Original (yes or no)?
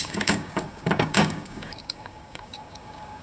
no